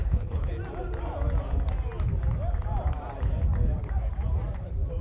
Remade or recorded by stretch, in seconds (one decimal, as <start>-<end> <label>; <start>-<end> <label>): 0.0-0.5 remade; 0.5-5.0 recorded